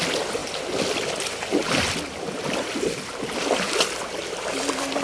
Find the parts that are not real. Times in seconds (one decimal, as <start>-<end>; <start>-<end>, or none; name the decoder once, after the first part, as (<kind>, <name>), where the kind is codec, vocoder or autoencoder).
1.5-4.5 (vocoder, BigVGAN v2)